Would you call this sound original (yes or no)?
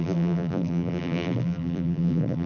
no